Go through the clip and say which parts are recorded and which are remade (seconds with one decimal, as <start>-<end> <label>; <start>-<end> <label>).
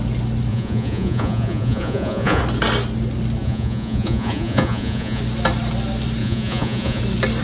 0.0-0.5 recorded; 0.5-2.4 remade; 2.4-3.4 recorded; 3.4-5.2 remade; 5.2-6.2 recorded; 6.2-7.0 remade; 7.0-7.4 recorded